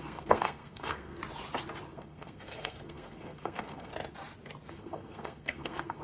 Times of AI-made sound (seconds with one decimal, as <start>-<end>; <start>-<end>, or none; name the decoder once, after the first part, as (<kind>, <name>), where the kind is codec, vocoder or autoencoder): 0.0-1.2 (codec, SNAC); 1.9-3.9; 4.7-6.0